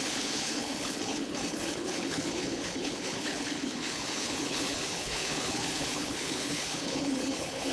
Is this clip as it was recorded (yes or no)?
no